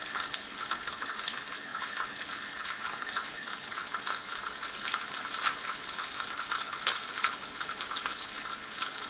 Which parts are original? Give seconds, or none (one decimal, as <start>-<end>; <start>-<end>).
none